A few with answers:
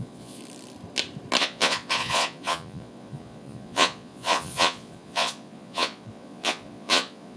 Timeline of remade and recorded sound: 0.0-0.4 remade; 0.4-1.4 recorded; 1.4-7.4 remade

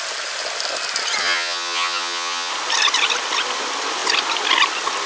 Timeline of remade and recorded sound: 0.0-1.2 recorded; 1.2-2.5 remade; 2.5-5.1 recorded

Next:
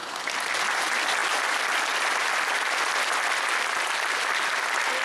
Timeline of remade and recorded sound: 0.0-5.0 recorded